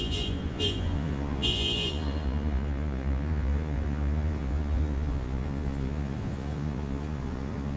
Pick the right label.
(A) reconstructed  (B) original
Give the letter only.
A